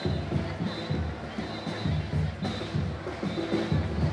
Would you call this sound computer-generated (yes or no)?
no